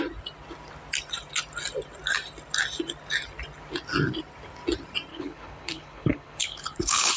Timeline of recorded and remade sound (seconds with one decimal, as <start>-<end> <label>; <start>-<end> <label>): 0.0-5.1 recorded; 5.1-7.2 remade